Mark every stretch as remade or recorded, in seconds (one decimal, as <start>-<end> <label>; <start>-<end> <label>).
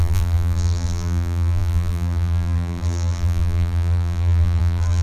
0.0-5.0 remade